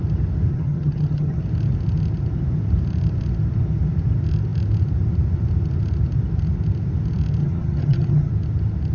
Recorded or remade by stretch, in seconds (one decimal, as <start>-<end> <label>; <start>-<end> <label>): 0.0-0.5 recorded; 0.5-1.4 remade; 1.4-7.4 recorded; 7.4-8.3 remade; 8.3-8.9 recorded